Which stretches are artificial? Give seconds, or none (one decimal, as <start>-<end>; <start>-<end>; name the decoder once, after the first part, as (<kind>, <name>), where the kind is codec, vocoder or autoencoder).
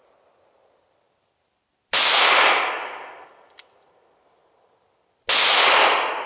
none